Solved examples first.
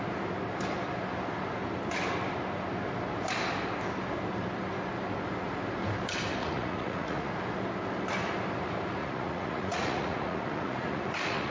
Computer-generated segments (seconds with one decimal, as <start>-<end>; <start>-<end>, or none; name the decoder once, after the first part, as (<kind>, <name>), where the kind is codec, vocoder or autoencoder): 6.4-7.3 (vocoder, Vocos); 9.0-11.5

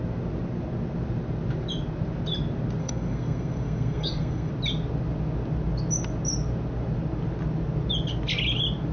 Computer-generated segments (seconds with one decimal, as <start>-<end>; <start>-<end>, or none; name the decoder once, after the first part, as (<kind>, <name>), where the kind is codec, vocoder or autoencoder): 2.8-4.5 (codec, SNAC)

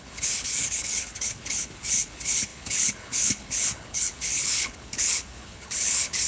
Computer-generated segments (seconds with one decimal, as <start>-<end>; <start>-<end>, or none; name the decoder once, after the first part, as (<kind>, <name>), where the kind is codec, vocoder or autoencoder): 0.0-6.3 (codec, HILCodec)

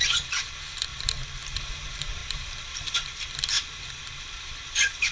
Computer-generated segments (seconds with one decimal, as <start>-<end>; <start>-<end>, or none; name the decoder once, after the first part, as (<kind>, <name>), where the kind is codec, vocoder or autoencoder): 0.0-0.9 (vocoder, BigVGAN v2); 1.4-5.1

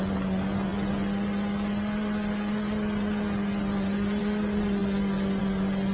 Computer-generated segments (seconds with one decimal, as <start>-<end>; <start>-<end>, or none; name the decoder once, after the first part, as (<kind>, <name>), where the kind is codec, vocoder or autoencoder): none

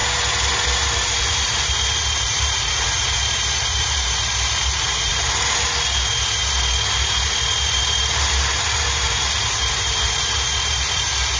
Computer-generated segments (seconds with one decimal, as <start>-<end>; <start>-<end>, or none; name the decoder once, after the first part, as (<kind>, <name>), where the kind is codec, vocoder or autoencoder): 0.0-5.1 (vocoder, BigVGAN v2); 7.5-11.4